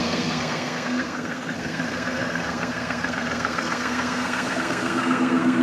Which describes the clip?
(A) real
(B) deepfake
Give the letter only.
B